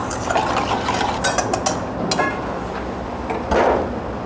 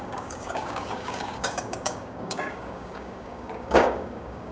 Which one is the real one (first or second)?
first